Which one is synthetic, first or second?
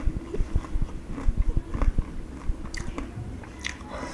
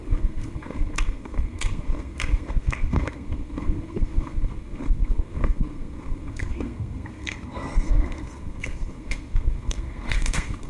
second